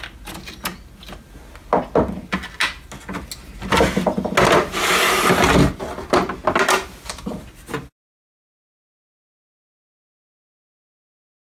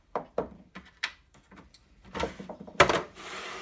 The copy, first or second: second